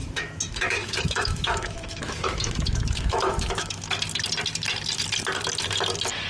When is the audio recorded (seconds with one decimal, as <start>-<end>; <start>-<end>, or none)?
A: 3.8-6.3